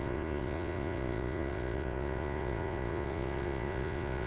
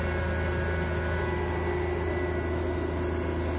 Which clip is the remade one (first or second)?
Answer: first